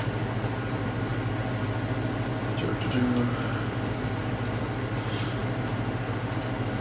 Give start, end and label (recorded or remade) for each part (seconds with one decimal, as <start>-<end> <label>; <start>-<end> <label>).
0.0-5.4 recorded; 5.4-6.3 remade; 6.3-6.8 recorded